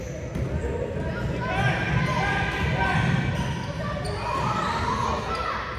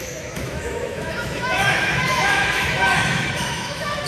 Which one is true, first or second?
first